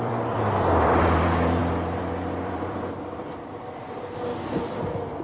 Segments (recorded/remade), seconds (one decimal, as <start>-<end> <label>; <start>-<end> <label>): 0.0-4.3 remade; 4.3-5.2 recorded